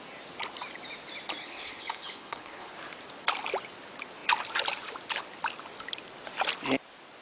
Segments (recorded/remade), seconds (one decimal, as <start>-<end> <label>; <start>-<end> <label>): 0.0-1.4 recorded; 1.4-2.7 remade; 2.7-7.2 recorded